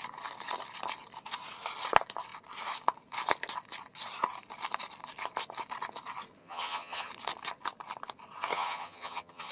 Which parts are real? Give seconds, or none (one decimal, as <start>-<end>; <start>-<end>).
0.0-6.4; 7.1-8.5

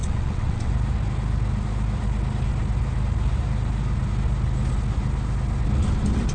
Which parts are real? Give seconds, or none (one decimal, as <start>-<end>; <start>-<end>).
0.7-6.3

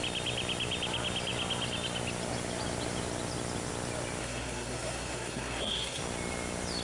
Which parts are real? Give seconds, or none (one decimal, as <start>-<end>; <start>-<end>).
0.0-4.2; 6.0-6.8

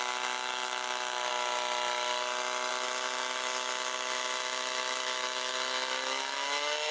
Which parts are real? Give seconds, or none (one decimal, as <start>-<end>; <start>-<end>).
1.3-2.7

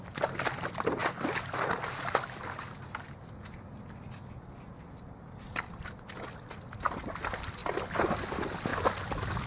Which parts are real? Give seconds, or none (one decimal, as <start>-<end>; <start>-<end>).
0.0-9.5

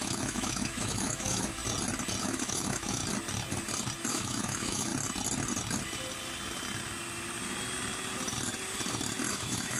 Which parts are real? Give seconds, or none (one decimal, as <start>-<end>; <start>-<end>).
1.6-2.2; 3.0-4.1; 4.9-9.3

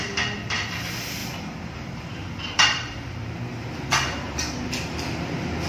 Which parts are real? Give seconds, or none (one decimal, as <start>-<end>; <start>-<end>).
0.0-1.2; 3.4-5.7

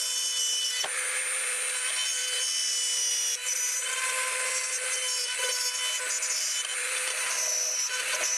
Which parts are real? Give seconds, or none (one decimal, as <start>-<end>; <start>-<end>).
0.0-3.4; 3.9-8.4